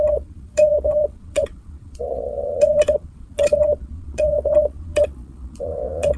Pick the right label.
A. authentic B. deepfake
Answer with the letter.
B